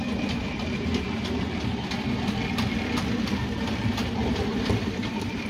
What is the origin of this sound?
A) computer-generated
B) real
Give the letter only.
B